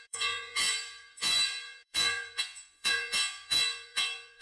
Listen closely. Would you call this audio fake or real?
fake